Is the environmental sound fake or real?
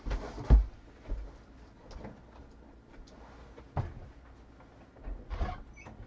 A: real